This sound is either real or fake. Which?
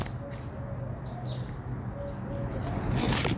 real